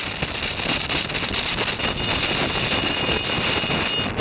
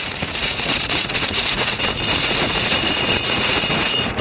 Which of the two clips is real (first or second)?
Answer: first